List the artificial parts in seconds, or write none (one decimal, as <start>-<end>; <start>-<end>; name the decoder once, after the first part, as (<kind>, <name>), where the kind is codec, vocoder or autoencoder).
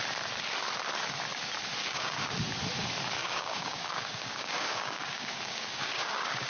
1.8-2.3 (codec, DAC); 3.2-6.5